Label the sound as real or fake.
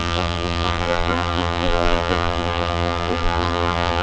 fake